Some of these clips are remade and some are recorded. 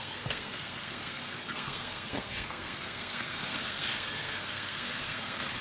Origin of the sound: remade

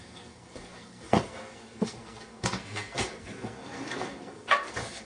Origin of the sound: remade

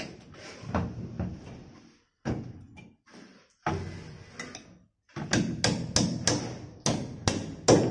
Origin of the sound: recorded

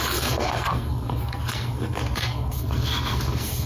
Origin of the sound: remade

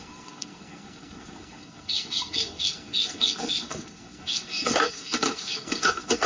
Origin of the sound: remade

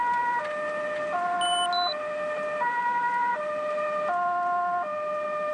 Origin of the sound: recorded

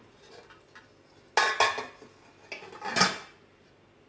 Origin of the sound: recorded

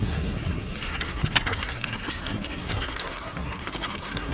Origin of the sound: remade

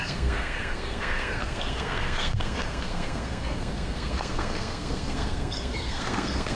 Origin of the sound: remade